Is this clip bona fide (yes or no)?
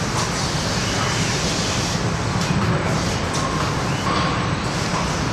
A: yes